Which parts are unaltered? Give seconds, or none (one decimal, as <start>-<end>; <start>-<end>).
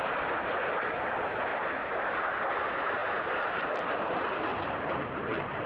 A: 0.0-5.7